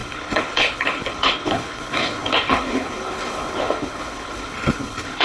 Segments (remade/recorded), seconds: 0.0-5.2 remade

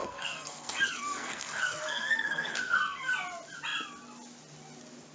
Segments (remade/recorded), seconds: 0.0-3.1 remade; 3.1-5.1 recorded